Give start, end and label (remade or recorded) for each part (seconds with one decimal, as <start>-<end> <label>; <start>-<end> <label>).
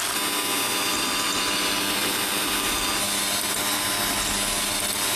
0.0-2.0 recorded; 2.0-2.8 remade; 2.8-5.2 recorded